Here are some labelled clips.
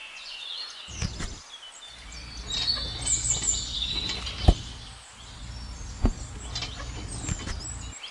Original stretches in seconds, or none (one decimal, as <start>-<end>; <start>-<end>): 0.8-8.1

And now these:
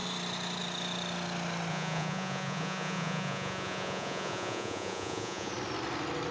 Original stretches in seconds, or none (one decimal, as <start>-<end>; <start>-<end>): 0.0-1.7; 5.5-6.3

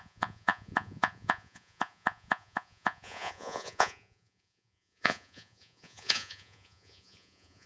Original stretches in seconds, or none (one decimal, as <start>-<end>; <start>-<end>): none